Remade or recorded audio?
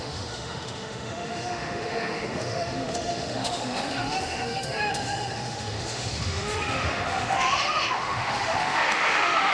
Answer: remade